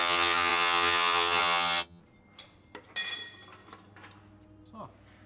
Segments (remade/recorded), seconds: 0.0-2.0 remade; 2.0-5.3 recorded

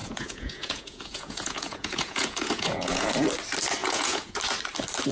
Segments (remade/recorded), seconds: 0.0-3.1 remade; 3.1-3.8 recorded; 3.8-4.4 remade; 4.4-5.1 recorded

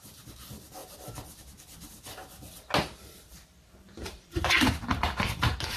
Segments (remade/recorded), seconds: 0.0-0.8 remade; 0.8-3.1 recorded; 3.1-5.8 remade

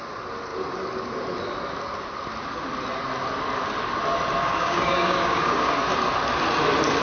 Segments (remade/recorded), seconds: 0.0-4.4 recorded; 4.4-5.7 remade; 5.7-7.0 recorded

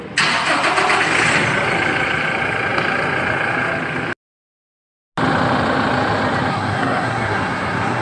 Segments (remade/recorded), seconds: 0.0-6.5 recorded; 6.5-8.0 remade